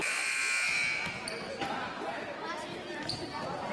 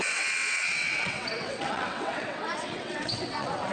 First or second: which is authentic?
first